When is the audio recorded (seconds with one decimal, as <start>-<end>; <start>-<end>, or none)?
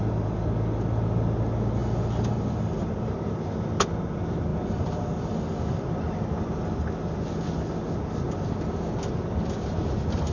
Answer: 0.0-10.3